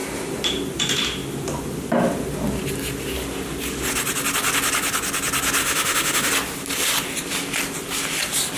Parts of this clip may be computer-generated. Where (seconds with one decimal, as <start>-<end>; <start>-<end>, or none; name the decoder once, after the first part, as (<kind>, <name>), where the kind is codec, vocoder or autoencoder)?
5.6-6.3 (autoencoder, DAC-VAE)